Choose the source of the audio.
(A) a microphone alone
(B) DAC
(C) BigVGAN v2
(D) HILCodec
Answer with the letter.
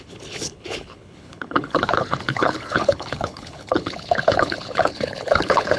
D